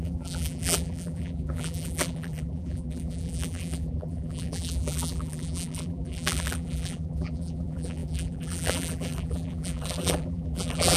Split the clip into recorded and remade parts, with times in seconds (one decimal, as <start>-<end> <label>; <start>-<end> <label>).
0.0-11.0 remade